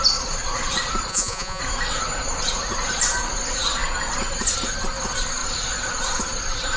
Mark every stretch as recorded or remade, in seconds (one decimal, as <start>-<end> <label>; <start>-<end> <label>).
0.0-1.1 recorded; 1.1-1.6 remade; 1.6-6.8 recorded